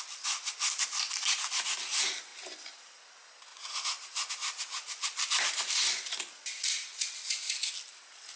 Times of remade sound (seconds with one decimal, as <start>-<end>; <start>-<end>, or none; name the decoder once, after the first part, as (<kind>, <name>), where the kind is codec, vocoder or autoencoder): 3.5-4.3 (vocoder, Vocos)